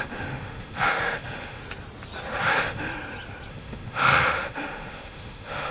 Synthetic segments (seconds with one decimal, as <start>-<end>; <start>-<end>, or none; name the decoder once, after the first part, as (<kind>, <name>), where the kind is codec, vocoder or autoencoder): 0.0-1.6 (autoencoder, DAC-VAE); 2.4-2.9; 3.5-5.7